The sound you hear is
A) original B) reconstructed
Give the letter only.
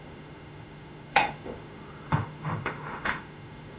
B